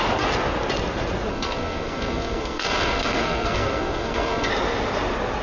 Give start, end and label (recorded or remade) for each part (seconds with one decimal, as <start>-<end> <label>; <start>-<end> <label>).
0.0-1.3 recorded; 1.3-4.5 remade; 4.5-5.4 recorded